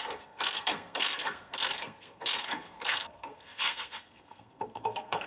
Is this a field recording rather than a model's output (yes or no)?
no